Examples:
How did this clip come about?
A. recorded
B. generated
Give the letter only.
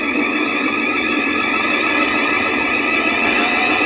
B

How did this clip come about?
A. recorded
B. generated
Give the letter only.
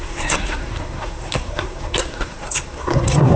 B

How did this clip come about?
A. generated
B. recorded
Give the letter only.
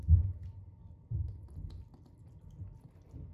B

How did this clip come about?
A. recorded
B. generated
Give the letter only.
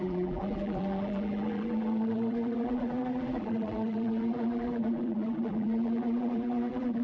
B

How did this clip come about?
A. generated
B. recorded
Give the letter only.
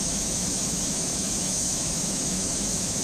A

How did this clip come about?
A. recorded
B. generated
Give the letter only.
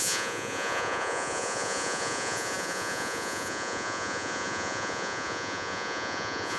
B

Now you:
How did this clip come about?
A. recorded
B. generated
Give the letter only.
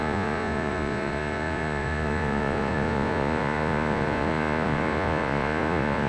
B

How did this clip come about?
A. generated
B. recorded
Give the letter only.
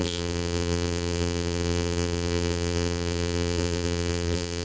A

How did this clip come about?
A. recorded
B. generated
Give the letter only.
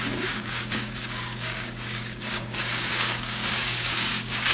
B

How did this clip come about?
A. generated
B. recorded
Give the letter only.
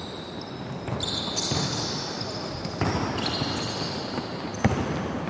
B